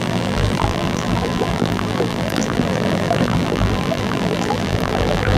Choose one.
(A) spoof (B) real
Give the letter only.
A